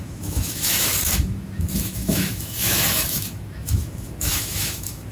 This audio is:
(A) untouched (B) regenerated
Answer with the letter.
B